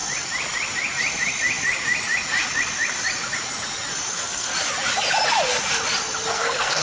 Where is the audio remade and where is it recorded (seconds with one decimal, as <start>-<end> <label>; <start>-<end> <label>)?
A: 0.0-4.1 recorded; 4.1-4.5 remade; 4.5-6.3 recorded; 6.3-6.8 remade

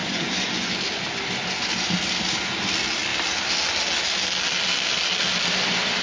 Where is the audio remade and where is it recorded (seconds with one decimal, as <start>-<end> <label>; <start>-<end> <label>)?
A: 0.0-0.7 remade; 0.7-6.0 recorded